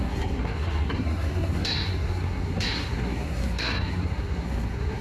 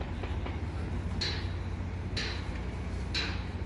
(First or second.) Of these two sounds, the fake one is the first